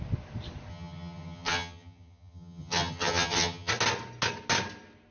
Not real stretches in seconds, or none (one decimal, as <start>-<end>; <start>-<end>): 0.7-3.7